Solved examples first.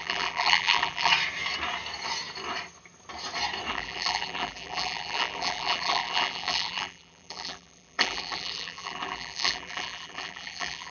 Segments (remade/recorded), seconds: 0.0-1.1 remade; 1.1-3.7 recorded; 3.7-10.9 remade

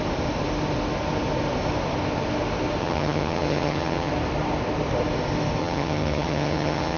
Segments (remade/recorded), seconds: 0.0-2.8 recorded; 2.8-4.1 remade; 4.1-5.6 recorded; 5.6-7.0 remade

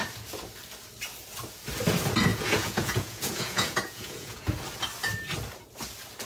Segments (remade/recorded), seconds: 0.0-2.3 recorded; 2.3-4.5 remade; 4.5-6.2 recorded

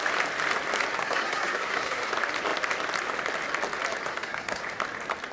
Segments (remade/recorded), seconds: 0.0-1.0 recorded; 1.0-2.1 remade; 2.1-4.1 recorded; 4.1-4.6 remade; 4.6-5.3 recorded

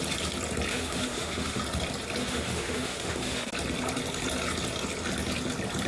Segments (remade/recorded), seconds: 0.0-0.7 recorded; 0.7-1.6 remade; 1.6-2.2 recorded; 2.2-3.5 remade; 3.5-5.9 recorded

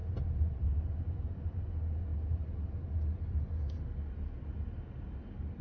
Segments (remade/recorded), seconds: 0.0-5.6 recorded